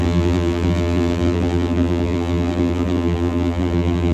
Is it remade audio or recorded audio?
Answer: remade